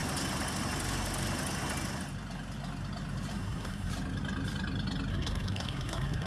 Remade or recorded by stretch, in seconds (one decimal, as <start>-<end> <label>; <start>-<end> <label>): 0.0-3.3 recorded; 3.3-3.9 remade; 3.9-5.1 recorded; 5.1-6.3 remade